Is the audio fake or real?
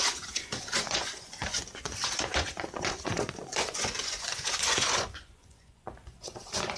fake